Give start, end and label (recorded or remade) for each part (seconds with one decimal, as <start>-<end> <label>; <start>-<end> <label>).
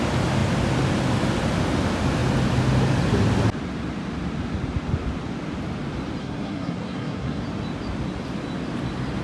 0.0-6.2 recorded; 6.2-7.4 remade; 7.4-9.2 recorded